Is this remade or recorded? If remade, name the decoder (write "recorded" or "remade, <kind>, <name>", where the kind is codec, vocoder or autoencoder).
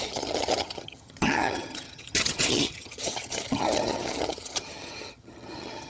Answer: remade, vocoder, HiFi-GAN